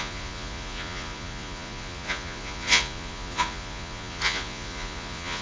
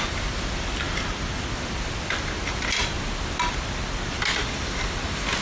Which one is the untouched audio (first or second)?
second